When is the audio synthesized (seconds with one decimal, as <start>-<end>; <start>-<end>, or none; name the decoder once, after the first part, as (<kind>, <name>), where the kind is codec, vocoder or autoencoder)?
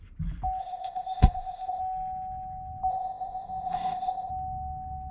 0.6-1.8 (codec, ZipCodec); 2.9-4.3